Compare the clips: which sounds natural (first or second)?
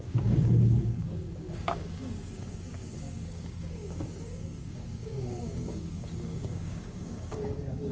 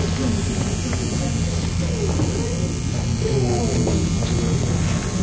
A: second